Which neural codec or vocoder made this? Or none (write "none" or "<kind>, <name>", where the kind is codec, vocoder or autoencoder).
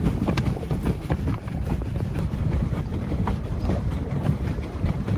vocoder, BigVGAN v2